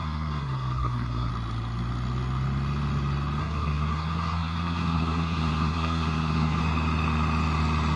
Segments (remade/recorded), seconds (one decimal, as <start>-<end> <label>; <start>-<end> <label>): 0.0-1.3 remade; 1.3-3.4 recorded; 3.4-6.6 remade; 6.6-8.0 recorded